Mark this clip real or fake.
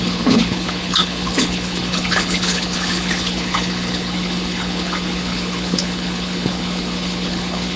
fake